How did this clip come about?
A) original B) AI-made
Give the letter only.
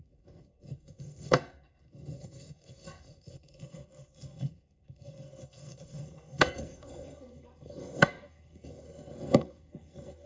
B